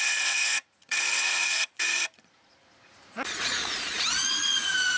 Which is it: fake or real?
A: fake